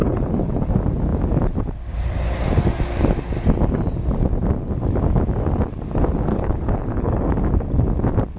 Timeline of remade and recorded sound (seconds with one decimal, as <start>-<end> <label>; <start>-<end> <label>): 0.0-0.7 remade; 0.7-6.3 recorded; 6.3-7.2 remade; 7.2-8.4 recorded